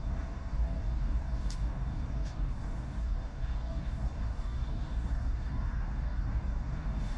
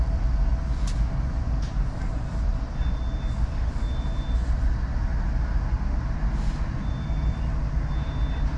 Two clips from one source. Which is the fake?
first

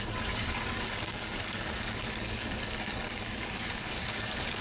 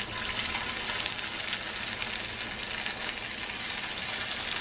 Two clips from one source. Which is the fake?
first